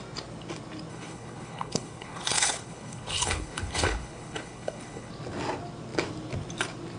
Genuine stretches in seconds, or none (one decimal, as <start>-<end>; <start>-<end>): 0.0-0.9; 5.1-7.0